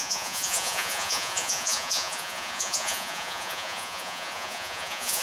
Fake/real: fake